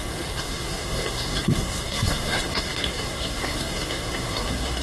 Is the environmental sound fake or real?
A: fake